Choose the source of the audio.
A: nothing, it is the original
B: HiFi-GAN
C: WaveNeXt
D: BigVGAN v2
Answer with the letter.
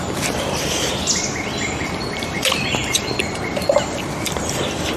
D